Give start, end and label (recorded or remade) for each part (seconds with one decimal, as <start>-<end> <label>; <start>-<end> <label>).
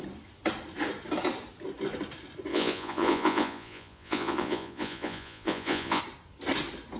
0.0-2.5 recorded; 2.5-6.0 remade; 6.0-7.0 recorded